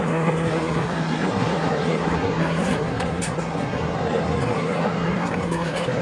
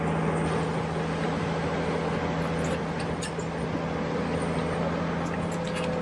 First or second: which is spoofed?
first